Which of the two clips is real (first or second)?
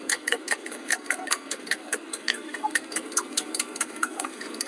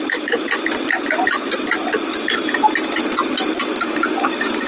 second